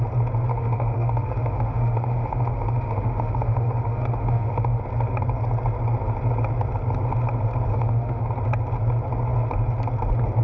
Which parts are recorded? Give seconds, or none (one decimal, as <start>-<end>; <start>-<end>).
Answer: 0.0-0.5; 4.8-7.7; 8.3-10.4